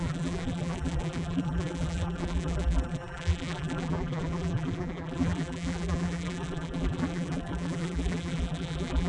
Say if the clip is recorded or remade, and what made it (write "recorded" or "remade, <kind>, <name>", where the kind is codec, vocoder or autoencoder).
remade, vocoder, BigVGAN v2